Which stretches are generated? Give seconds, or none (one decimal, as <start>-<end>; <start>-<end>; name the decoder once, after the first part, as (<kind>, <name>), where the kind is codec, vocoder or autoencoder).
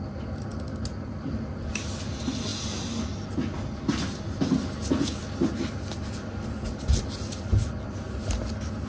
none